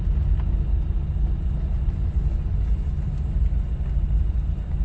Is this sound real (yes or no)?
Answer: yes